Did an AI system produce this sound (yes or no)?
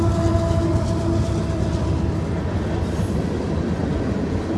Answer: no